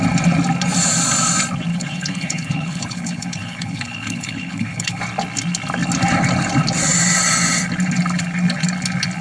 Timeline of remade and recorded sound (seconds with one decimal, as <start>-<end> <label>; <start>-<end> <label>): 0.0-1.7 recorded; 1.7-5.0 remade; 5.0-9.2 recorded